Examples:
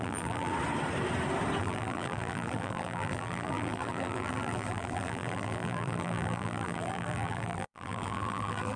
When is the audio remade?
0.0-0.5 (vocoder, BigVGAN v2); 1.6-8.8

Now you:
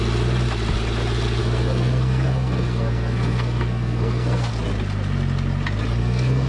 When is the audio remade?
1.4-4.5 (codec, SNAC); 6.0-6.5

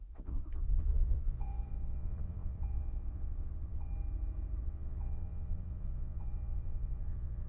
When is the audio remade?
0.0-3.9 (vocoder, Vocos); 4.6-7.5

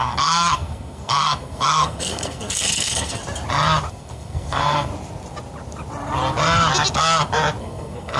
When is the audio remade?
0.0-3.2 (codec, SNAC); 3.9-4.9; 7.6-8.2